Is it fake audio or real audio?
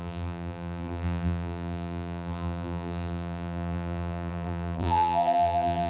fake